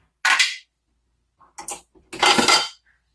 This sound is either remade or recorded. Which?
recorded